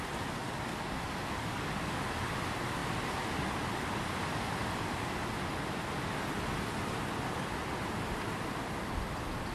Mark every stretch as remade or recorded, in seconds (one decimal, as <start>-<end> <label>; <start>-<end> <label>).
0.0-0.4 recorded; 0.4-2.0 remade; 2.0-9.5 recorded